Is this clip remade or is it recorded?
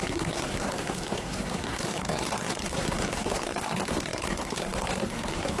remade